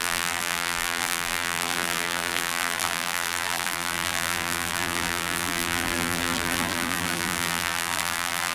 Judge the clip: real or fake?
fake